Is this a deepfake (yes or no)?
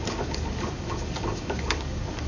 yes